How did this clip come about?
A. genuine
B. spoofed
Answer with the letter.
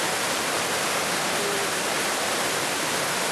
A